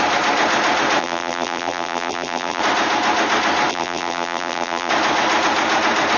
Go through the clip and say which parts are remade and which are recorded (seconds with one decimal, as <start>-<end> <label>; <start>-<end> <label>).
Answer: 0.0-1.0 recorded; 1.0-2.6 remade; 2.6-3.7 recorded; 3.7-4.9 remade; 4.9-6.2 recorded